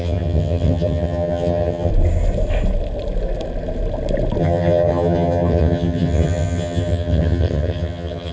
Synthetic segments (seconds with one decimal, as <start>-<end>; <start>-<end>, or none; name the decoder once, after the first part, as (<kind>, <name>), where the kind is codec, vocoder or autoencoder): 0.0-1.9 (vocoder, HiFi-GAN); 4.4-8.3